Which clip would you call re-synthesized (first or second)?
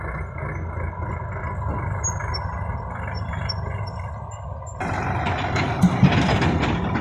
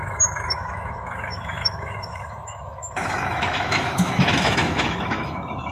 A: second